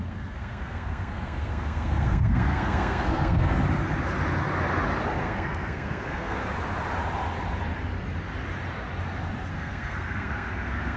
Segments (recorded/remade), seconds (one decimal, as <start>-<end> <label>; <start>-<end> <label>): 0.0-3.6 remade; 3.6-5.2 recorded; 5.2-6.4 remade; 6.4-9.5 recorded; 9.5-11.0 remade